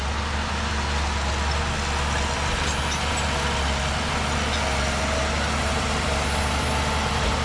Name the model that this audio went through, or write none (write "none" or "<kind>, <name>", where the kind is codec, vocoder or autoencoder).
none